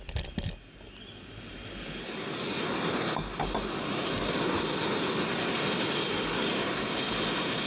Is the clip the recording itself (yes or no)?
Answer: yes